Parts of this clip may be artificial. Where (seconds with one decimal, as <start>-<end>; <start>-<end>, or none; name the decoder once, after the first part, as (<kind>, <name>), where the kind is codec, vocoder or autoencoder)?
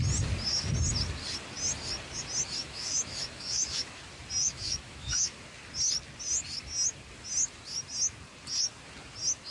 2.6-4.0 (autoencoder, DAC-VAE); 4.4-5.3